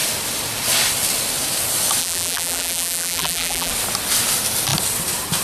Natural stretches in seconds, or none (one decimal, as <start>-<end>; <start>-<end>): 0.0-2.0; 3.7-5.4